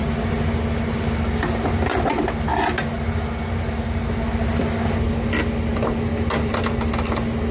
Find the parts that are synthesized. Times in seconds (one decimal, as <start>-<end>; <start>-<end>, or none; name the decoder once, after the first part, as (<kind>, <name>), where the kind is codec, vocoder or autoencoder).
none